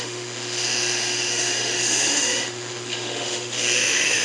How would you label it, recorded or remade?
remade